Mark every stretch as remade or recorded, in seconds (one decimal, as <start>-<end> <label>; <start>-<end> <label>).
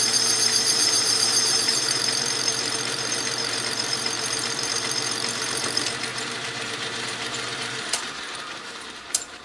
0.0-9.4 remade